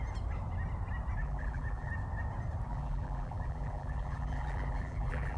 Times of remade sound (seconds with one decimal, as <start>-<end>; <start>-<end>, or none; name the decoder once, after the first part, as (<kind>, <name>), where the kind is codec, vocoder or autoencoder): 1.2-1.9 (vocoder, BigVGAN v2); 2.7-5.4